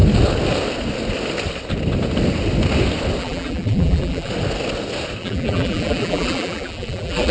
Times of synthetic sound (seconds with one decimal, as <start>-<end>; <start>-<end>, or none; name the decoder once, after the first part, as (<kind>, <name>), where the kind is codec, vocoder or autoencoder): 3.2-4.3 (vocoder, BigVGAN v2); 5.2-7.3